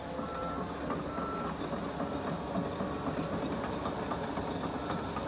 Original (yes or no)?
yes